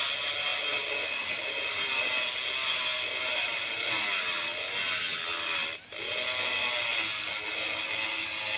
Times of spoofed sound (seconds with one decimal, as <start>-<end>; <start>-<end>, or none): none